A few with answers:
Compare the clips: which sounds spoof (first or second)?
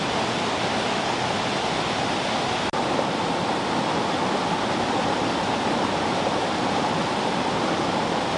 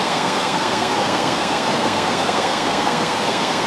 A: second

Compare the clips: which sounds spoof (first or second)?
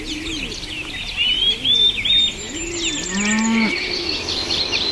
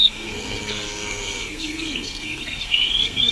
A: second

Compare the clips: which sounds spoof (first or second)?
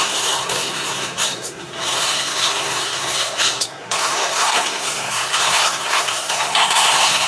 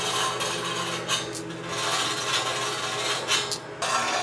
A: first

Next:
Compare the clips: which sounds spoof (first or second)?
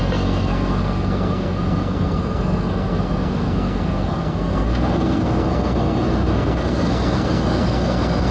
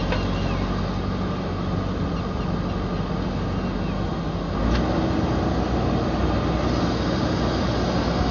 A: first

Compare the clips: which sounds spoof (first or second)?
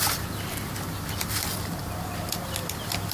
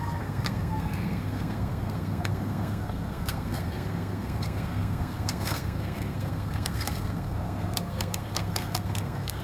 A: second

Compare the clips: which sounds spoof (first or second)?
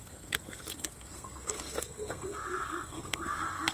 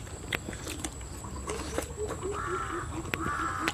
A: first